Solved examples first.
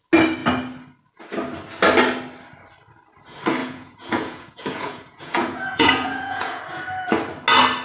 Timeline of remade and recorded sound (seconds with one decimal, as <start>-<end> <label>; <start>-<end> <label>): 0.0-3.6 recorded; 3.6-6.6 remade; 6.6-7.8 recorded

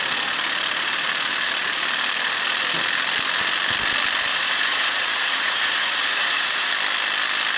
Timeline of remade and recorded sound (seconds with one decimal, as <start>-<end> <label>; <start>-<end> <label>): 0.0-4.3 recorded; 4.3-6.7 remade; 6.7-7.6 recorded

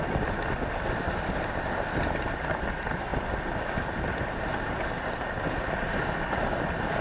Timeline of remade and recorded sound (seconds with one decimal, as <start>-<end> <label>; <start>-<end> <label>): 0.0-7.0 recorded